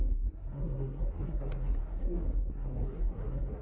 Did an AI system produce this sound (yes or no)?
yes